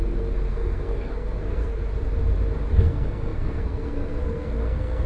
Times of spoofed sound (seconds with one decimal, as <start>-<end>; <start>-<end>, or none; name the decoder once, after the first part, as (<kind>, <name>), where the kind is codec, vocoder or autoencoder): 0.0-1.9 (codec, SNAC); 2.7-5.1